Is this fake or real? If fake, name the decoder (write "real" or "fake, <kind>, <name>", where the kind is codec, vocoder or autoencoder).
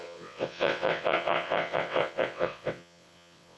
fake, vocoder, WaveNeXt